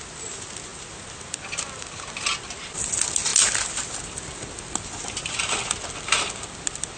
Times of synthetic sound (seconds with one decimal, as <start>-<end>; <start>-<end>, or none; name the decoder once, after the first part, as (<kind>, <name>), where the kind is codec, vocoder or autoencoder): none